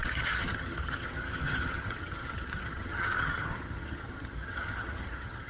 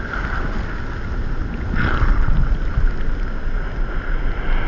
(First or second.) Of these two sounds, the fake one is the first